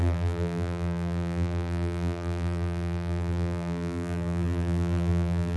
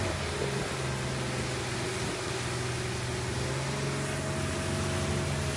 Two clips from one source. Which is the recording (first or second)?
second